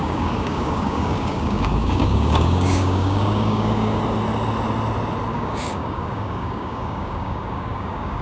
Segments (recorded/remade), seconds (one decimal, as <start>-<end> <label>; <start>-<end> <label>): 0.0-4.0 remade; 4.0-5.3 recorded; 5.3-8.2 remade